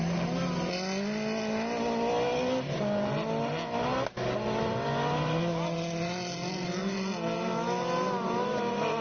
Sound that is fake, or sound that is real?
real